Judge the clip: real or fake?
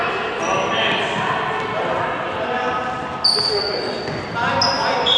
real